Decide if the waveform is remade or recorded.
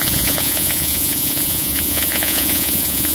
remade